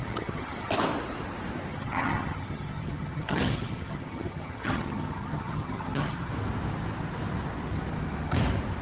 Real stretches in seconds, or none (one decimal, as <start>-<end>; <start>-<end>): 0.7-1.7; 6.3-8.8